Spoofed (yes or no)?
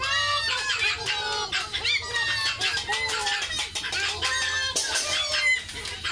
no